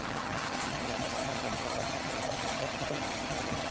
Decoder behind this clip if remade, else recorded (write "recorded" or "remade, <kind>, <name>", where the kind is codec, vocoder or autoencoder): remade, vocoder, HiFi-GAN